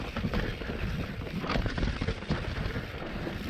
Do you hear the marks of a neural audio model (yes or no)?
no